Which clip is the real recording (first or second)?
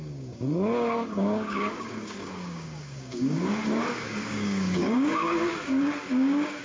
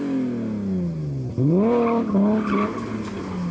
second